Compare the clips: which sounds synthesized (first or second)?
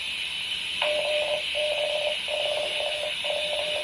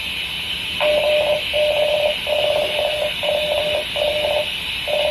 first